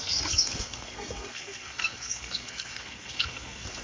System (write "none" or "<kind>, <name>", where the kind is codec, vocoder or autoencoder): codec, SNAC